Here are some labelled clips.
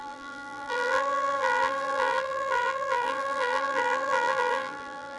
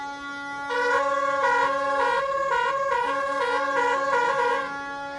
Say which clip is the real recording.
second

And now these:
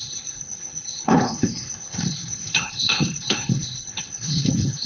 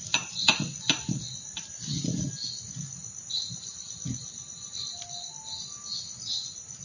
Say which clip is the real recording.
second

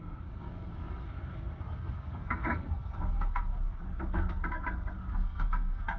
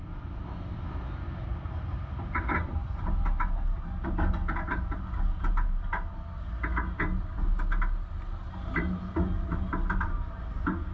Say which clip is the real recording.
second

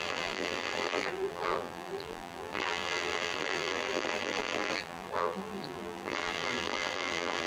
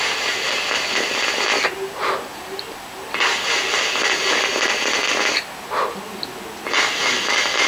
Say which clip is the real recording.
second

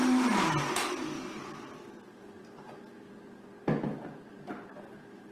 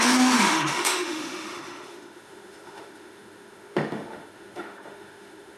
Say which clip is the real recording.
first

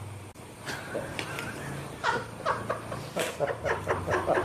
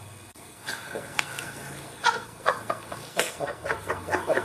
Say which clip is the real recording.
first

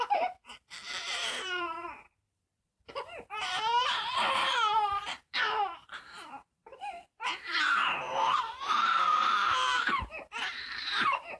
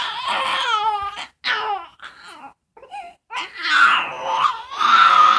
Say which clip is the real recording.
second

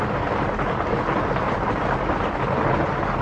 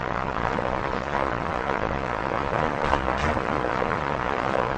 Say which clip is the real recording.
first